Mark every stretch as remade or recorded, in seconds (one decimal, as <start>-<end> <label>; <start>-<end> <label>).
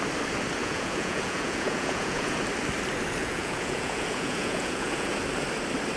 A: 0.0-0.6 recorded; 0.6-2.4 remade; 2.4-3.2 recorded; 3.2-5.2 remade; 5.2-6.0 recorded